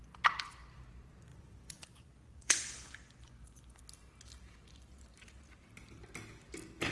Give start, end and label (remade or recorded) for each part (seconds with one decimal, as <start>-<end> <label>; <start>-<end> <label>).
0.0-1.3 recorded; 1.3-3.8 remade; 3.8-6.9 recorded